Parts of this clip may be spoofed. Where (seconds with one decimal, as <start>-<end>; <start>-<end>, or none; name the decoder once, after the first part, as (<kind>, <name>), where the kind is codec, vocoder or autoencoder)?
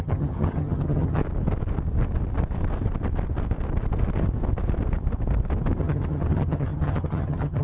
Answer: 0.0-1.2 (vocoder, HiFi-GAN); 5.8-7.6